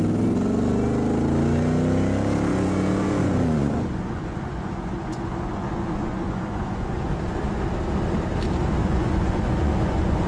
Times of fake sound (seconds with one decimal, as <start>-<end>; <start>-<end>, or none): 2.5-7.1; 8.8-10.3